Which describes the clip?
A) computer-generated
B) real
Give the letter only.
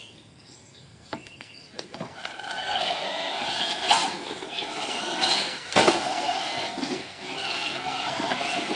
A